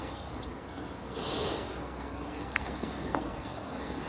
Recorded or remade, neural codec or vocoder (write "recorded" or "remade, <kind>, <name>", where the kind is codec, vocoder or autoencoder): remade, codec, SNAC